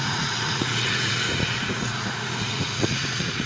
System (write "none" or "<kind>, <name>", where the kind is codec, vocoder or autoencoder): vocoder, Vocos